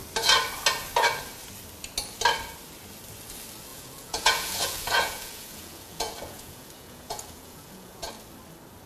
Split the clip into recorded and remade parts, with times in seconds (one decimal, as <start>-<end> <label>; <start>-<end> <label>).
0.0-3.7 recorded; 3.7-8.1 remade; 8.1-8.9 recorded